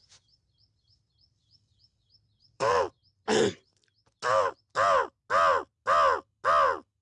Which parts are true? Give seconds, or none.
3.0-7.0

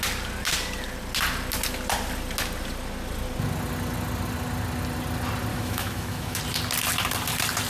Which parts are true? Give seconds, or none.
0.0-5.5; 6.4-7.7